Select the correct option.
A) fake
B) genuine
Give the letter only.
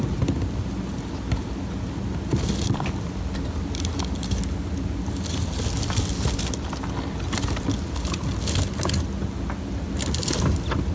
B